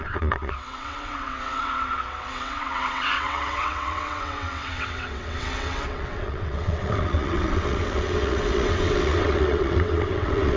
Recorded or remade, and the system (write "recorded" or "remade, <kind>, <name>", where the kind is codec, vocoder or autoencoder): remade, vocoder, WaveNeXt